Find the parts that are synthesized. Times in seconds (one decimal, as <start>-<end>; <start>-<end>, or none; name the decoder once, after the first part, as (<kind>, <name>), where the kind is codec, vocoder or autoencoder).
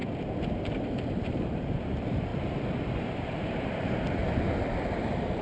0.6-4.2 (vocoder, BigVGAN v2); 4.9-5.4